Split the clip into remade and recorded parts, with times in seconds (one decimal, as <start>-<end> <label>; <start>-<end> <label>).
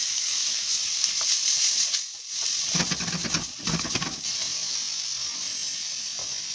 0.0-0.8 remade; 0.8-6.5 recorded